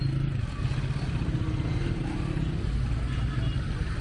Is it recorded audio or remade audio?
recorded